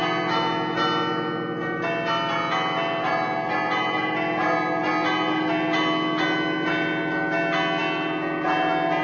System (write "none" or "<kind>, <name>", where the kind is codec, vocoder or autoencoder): none